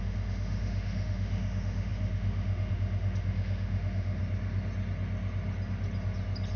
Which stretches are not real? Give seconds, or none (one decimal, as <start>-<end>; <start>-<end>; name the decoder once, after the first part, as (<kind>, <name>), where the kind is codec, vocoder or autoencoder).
0.0-4.2 (autoencoder, DAC-VAE)

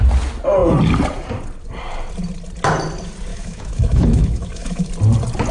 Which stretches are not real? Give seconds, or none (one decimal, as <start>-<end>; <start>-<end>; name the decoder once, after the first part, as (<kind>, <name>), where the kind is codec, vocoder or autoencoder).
3.3-4.9 (autoencoder, DAC-VAE)

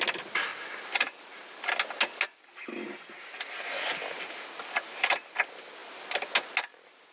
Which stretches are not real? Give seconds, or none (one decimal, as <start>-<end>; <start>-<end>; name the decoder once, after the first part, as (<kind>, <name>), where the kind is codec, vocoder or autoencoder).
none

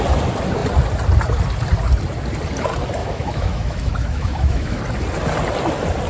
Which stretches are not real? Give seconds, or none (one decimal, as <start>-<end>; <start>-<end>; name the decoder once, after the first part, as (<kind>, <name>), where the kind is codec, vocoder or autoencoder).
3.0-4.8 (autoencoder, DAC-VAE)

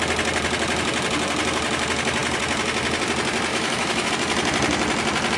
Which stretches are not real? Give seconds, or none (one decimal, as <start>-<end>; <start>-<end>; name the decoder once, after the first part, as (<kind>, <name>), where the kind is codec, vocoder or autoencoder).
3.5-4.1 (autoencoder, DAC-VAE)

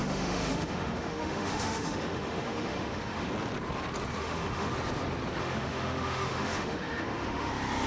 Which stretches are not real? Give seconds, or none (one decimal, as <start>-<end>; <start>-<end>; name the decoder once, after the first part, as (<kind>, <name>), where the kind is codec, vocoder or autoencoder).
0.0-3.3 (autoencoder, DAC-VAE); 4.2-4.7; 5.4-7.5